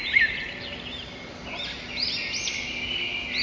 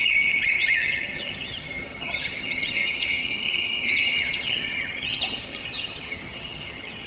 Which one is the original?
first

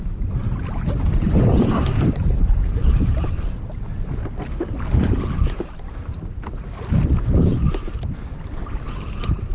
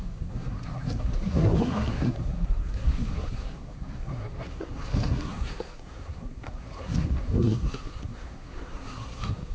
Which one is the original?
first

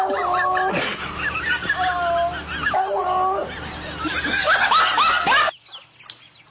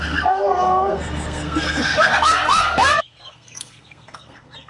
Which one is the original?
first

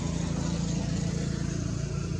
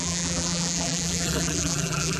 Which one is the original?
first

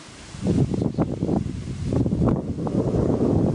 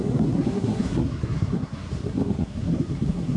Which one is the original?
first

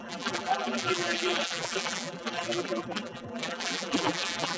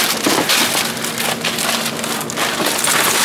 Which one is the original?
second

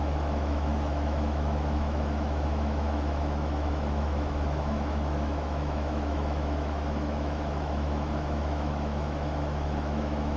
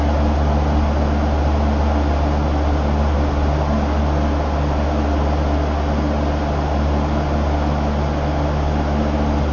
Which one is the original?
second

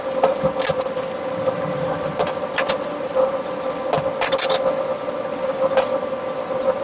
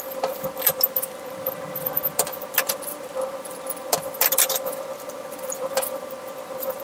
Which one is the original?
first